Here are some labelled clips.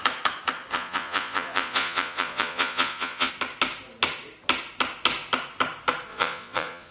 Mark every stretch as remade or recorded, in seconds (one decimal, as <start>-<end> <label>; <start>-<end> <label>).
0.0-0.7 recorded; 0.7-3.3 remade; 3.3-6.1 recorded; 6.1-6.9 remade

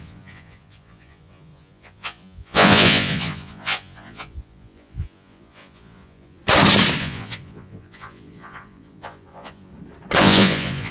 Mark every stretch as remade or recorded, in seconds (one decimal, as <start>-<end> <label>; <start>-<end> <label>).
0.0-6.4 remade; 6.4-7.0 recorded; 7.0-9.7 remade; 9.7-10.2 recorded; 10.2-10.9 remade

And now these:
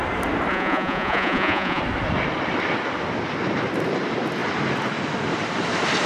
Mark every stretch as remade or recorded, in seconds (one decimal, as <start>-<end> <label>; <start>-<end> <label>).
0.0-0.5 recorded; 0.5-1.8 remade; 1.8-6.1 recorded

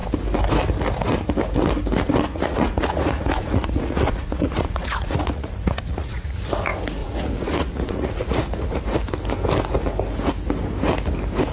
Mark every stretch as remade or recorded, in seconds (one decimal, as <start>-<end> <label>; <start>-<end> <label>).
0.0-2.3 recorded; 2.3-6.4 remade; 6.4-7.0 recorded; 7.0-8.8 remade; 8.8-11.5 recorded

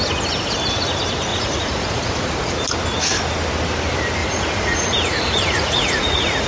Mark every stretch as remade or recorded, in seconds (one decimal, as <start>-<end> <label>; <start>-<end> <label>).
0.0-1.3 recorded; 1.3-2.5 remade; 2.5-4.2 recorded; 4.2-6.5 remade

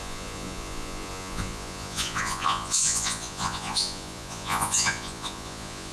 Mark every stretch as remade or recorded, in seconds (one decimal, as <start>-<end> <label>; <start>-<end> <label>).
0.0-5.9 remade

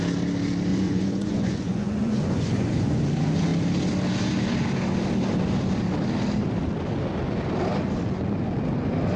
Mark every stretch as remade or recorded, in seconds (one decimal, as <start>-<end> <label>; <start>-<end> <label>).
0.0-0.7 recorded; 0.7-3.0 remade; 3.0-9.2 recorded